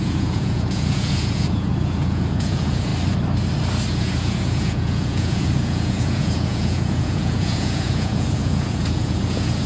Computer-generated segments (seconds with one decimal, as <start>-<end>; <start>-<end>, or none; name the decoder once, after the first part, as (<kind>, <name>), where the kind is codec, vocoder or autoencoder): 0.0-2.9 (vocoder, Vocos); 3.9-9.7